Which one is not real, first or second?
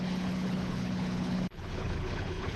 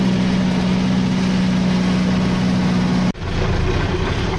first